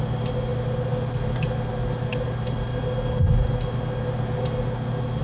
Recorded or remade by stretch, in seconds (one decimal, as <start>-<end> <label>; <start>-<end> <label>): 0.0-5.2 recorded